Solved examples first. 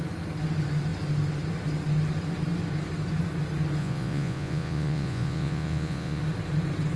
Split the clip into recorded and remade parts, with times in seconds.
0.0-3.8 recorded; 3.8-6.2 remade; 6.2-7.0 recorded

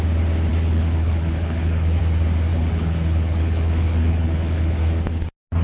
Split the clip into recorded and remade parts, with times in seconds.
0.0-0.5 recorded; 0.5-2.0 remade; 2.0-2.5 recorded; 2.5-4.8 remade; 4.8-5.6 recorded

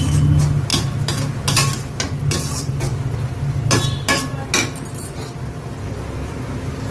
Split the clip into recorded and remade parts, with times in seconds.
0.0-6.9 recorded

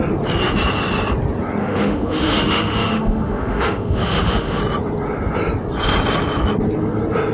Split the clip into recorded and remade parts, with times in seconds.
0.0-1.6 recorded; 1.6-4.6 remade; 4.6-7.3 recorded

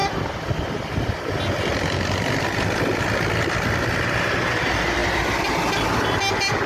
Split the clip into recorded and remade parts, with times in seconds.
0.0-6.7 recorded

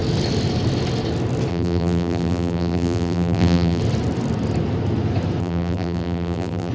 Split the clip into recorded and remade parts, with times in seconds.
0.0-1.5 recorded; 1.5-3.8 remade; 3.8-5.4 recorded; 5.4-6.7 remade

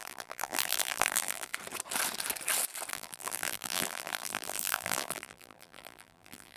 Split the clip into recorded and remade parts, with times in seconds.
0.0-1.5 remade; 1.5-2.9 recorded; 2.9-6.6 remade